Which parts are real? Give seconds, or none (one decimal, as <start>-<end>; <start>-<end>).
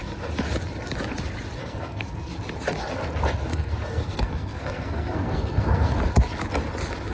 0.0-1.6; 2.3-3.5; 6.0-7.1